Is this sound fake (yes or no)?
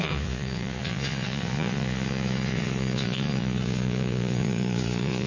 yes